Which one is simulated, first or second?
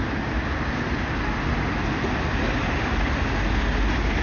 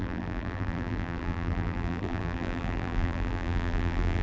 second